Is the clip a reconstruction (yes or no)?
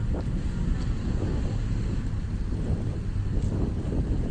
no